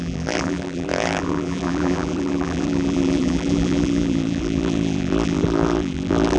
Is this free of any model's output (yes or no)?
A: no